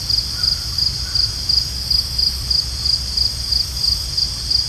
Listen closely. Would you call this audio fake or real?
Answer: real